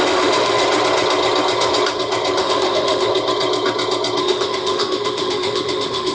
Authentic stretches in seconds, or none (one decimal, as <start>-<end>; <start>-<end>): 0.6-2.4; 3.1-4.2